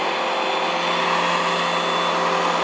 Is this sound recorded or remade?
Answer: recorded